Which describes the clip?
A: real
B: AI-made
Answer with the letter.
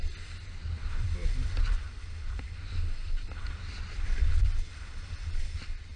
A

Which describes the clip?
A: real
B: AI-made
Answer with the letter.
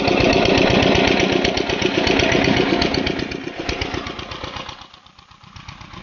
A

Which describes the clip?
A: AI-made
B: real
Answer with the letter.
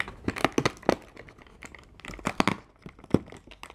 B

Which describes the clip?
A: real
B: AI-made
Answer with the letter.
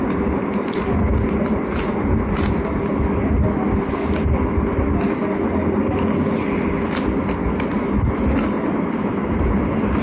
A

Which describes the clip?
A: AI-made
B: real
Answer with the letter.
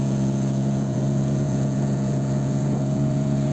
A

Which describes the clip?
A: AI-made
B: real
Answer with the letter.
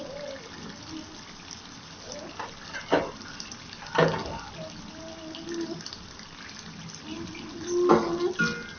B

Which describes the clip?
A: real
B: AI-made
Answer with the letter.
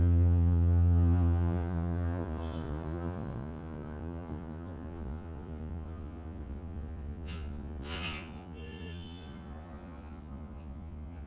B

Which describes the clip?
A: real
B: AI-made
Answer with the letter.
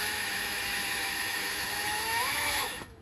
B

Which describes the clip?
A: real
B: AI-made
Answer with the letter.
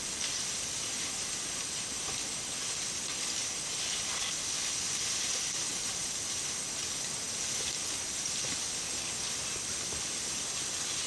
A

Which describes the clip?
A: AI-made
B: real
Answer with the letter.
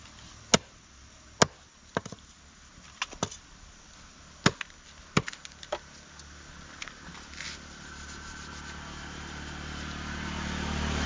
B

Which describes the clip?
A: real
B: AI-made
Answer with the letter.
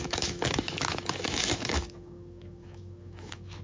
B